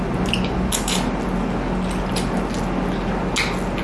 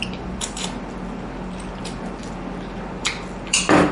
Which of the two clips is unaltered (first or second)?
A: first